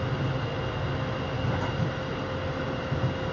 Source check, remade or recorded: recorded